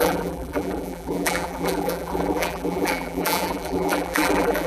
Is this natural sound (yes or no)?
no